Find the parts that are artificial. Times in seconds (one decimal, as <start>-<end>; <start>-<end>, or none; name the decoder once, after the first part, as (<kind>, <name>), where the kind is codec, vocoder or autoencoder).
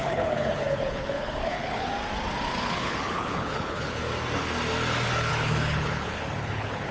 0.0-1.9 (codec, HILCodec); 2.6-4.0; 5.3-6.9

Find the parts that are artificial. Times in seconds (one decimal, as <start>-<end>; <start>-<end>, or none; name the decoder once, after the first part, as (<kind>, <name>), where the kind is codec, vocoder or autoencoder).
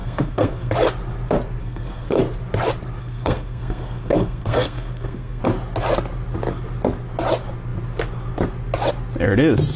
0.0-0.7 (codec, SNAC); 1.6-2.2; 3.0-5.4